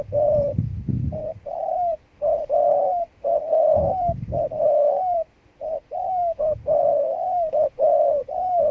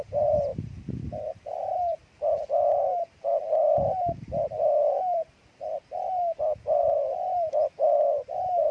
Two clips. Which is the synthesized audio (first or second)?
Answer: first